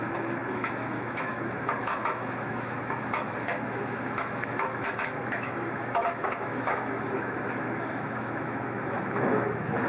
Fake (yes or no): yes